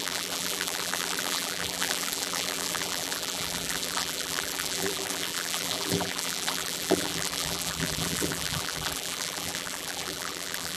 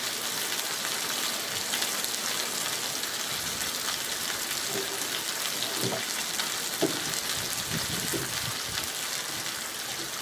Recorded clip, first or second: second